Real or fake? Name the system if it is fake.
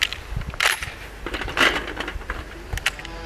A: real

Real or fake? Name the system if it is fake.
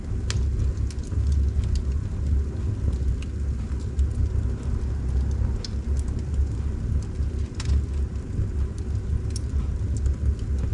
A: real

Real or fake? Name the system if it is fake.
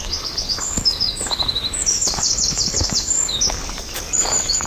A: fake, codec, DAC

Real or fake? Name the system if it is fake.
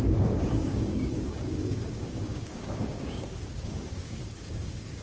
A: fake, codec, DAC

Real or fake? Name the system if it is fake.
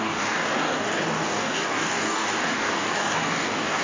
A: fake, codec, DAC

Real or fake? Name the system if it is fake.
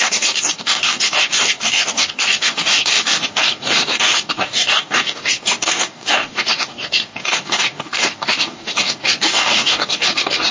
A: fake, codec, DAC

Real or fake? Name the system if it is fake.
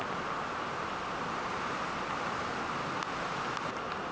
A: real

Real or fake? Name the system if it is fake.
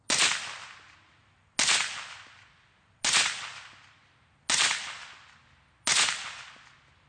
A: real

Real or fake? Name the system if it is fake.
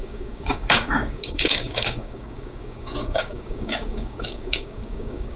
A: fake, codec, DAC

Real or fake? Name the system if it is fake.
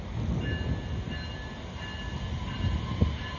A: real